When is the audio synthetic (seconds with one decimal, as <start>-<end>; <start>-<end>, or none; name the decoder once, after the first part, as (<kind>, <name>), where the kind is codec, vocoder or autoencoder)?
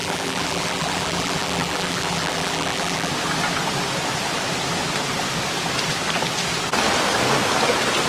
0.0-3.1 (vocoder, BigVGAN v2)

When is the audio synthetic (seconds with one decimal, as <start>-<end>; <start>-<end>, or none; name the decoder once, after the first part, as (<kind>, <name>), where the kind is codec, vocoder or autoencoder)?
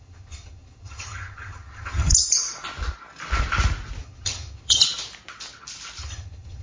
0.0-2.1 (vocoder, HiFi-GAN); 4.0-4.8; 6.0-6.6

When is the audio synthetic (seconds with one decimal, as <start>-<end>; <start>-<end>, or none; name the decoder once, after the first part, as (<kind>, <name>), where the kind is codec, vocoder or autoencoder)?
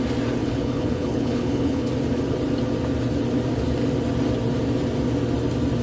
0.4-1.9 (codec, HILCodec)